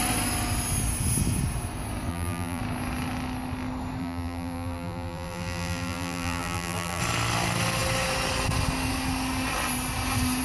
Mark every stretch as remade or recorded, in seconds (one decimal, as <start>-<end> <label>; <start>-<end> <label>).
0.0-2.1 recorded; 2.1-2.6 remade; 2.6-4.0 recorded; 4.0-7.0 remade; 7.0-10.4 recorded